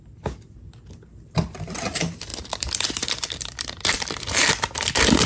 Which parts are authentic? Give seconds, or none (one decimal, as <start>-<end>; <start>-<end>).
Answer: 0.0-2.3; 4.2-5.3